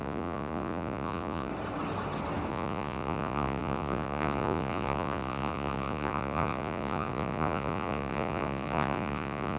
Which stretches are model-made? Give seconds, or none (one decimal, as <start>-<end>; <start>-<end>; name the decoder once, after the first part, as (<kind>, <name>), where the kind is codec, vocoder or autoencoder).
0.0-1.5 (vocoder, Vocos); 2.5-9.6